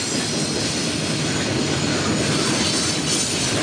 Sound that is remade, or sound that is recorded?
recorded